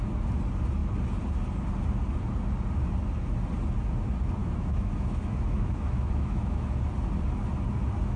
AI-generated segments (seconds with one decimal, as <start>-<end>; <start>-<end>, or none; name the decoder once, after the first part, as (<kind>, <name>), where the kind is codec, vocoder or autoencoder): 4.4-6.8 (autoencoder, DAC-VAE)